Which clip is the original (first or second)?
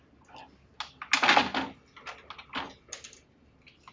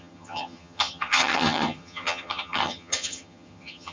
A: first